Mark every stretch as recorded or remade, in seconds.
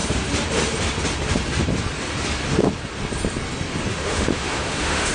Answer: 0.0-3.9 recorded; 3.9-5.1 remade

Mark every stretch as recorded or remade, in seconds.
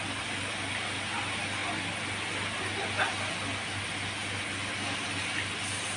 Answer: 0.0-6.0 recorded